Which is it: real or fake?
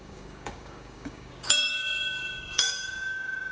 fake